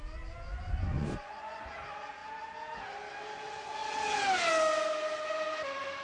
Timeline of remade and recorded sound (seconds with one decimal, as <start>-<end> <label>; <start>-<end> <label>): 0.0-0.5 recorded; 0.5-1.7 remade; 1.7-6.0 recorded